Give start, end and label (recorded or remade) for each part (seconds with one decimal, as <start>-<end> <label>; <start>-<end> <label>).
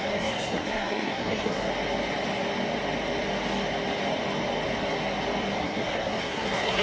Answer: 0.0-1.7 remade; 1.7-5.6 recorded; 5.6-6.8 remade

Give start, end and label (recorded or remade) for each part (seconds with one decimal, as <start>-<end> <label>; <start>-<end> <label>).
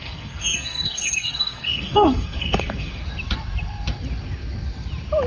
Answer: 0.0-3.0 remade; 3.0-5.3 recorded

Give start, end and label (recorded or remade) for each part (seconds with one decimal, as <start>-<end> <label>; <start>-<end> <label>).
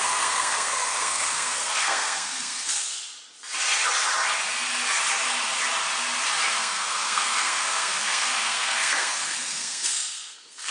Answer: 0.0-3.0 remade; 3.0-6.5 recorded; 6.5-10.7 remade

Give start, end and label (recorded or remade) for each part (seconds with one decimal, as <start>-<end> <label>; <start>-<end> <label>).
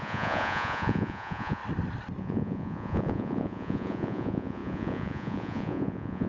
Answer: 0.0-1.6 remade; 1.6-2.2 recorded; 2.2-6.3 remade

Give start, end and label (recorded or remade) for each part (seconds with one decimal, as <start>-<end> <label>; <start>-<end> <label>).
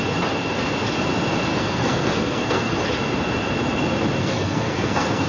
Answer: 0.0-1.5 recorded; 1.5-2.8 remade; 2.8-4.2 recorded; 4.2-5.3 remade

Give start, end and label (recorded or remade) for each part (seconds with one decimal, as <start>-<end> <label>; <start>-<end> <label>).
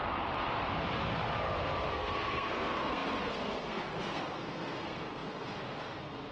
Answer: 0.0-1.9 recorded; 1.9-6.3 remade